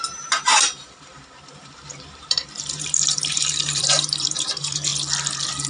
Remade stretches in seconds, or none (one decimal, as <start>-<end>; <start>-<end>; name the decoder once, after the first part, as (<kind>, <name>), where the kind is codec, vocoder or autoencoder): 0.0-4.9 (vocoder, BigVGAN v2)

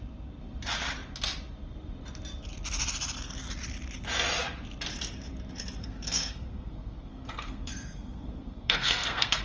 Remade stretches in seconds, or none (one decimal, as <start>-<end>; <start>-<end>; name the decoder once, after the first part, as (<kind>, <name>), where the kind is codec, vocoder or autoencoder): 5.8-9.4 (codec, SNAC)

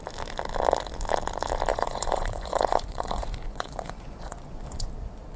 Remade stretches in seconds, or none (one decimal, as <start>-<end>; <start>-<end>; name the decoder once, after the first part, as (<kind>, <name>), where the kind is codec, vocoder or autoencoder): 1.7-4.9 (vocoder, Vocos)

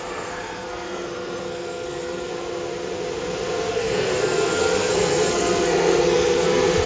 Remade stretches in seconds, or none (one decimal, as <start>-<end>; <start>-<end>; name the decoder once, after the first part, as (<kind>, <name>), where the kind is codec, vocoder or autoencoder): 0.0-2.3 (codec, SNAC); 3.7-6.9

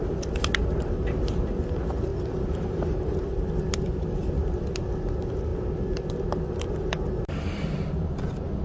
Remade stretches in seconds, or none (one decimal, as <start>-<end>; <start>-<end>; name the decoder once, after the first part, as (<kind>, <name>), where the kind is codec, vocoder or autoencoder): 2.1-3.2 (vocoder, BigVGAN v2)

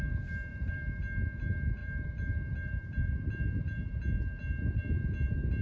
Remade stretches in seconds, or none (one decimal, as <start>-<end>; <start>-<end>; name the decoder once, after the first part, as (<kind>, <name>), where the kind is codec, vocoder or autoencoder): 0.5-1.0 (vocoder, BigVGAN v2); 1.8-4.0